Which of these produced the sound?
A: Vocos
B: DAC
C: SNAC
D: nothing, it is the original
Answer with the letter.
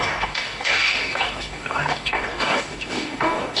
B